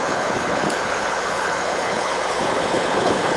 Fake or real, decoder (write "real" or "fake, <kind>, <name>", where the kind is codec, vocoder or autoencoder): fake, codec, HILCodec